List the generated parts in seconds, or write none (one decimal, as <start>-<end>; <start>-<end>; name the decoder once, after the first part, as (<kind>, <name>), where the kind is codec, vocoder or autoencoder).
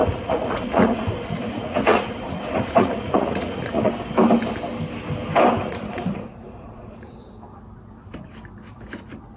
0.0-3.9 (vocoder, Vocos); 5.6-7.3